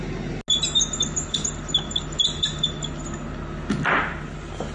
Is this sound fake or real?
real